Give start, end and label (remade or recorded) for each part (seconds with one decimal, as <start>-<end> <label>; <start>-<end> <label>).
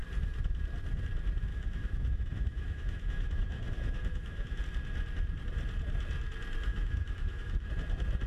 0.0-1.5 recorded; 1.5-4.6 remade; 4.6-6.7 recorded; 6.7-7.7 remade; 7.7-8.3 recorded